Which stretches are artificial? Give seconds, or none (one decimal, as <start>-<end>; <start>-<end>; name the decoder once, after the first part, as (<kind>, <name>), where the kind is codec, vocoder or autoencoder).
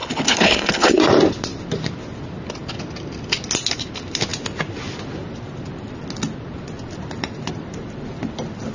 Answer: 0.0-1.0 (codec, HILCodec)